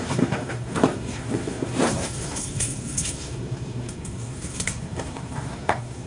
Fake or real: fake